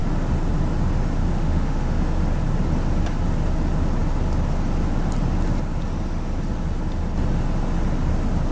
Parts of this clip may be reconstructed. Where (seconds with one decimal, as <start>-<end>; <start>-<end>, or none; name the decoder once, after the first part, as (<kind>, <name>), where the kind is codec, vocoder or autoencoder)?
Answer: 1.2-2.0 (autoencoder, DAC-VAE)